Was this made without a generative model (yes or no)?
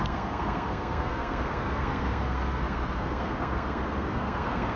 no